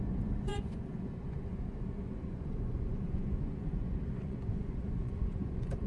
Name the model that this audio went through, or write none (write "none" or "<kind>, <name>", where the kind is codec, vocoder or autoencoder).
vocoder, Vocos